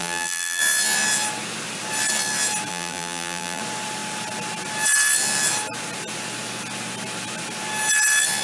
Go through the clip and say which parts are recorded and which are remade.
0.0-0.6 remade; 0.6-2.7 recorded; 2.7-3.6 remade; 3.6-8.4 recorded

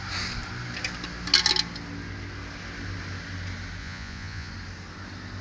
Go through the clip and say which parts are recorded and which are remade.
0.0-3.8 recorded; 3.8-4.5 remade; 4.5-5.4 recorded

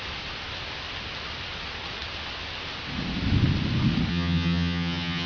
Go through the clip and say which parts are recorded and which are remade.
0.0-4.1 recorded; 4.1-5.3 remade